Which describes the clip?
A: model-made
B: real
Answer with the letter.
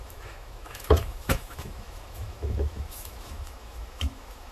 A